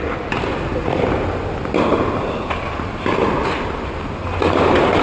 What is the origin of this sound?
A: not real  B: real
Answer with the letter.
B